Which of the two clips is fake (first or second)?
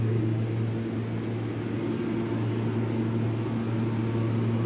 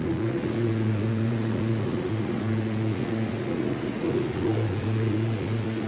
second